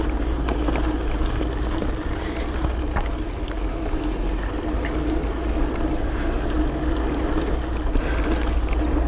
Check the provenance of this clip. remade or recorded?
recorded